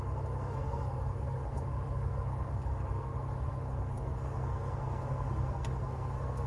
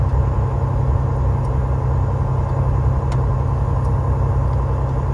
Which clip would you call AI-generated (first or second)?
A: first